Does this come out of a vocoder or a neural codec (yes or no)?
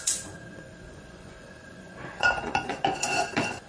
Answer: yes